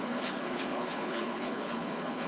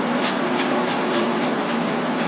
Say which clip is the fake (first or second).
first